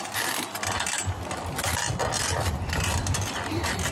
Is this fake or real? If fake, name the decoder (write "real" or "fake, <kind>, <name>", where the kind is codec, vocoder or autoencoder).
real